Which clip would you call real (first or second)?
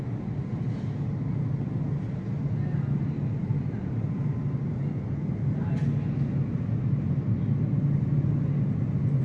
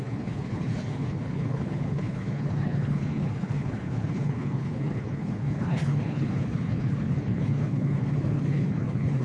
first